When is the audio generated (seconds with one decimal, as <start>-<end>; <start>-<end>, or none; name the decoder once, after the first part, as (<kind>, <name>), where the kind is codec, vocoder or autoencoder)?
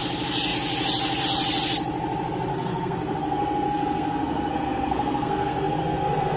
2.5-6.4 (codec, SNAC)